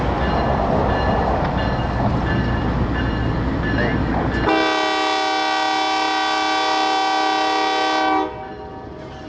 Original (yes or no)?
yes